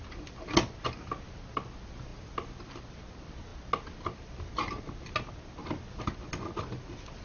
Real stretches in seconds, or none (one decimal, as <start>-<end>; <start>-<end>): 0.0-7.2